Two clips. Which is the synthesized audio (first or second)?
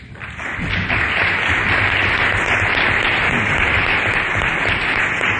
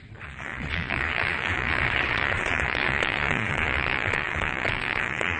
second